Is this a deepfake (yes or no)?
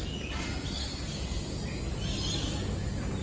no